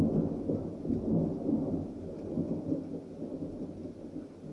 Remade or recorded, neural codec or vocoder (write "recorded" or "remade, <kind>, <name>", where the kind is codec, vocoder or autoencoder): recorded